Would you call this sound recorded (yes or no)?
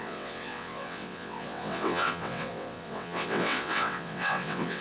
no